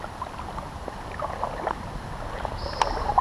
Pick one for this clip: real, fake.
real